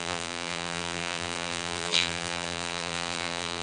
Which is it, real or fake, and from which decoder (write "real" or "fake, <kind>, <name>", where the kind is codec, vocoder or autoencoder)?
fake, vocoder, BigVGAN v2